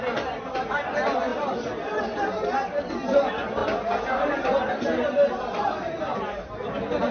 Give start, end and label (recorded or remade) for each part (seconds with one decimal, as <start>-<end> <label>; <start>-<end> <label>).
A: 0.0-3.6 recorded; 3.6-5.4 remade; 5.4-7.1 recorded